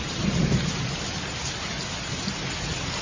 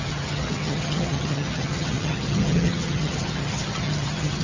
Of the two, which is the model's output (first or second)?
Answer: second